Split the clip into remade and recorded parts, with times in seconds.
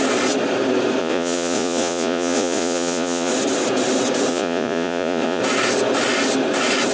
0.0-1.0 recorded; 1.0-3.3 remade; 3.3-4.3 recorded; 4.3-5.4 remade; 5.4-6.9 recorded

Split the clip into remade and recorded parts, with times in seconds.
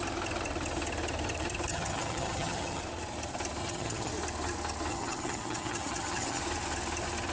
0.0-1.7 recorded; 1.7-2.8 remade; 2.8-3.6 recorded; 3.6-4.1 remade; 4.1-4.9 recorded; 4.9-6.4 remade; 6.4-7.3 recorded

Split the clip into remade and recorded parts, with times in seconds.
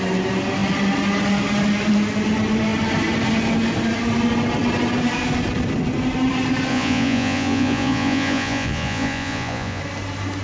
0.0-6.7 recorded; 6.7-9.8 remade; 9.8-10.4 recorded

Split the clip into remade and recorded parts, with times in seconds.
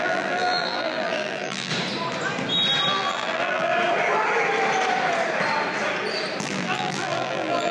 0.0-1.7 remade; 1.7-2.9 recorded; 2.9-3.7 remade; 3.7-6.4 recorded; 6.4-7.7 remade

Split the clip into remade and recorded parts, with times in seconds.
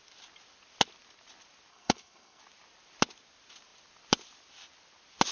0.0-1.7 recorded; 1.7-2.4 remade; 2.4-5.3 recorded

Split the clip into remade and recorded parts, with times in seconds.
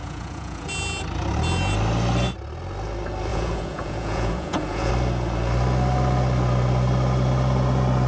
0.0-0.7 remade; 0.7-3.3 recorded; 3.3-4.9 remade; 4.9-8.1 recorded